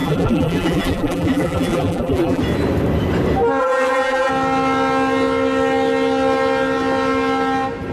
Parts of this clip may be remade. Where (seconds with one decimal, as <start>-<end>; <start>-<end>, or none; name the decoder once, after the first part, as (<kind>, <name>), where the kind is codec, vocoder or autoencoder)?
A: 0.0-2.4 (vocoder, BigVGAN v2); 3.6-4.3